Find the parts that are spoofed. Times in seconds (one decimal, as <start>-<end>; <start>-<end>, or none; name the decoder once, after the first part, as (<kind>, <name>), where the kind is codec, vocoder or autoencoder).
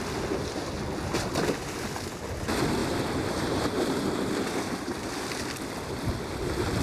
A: 2.8-4.3 (vocoder, BigVGAN v2)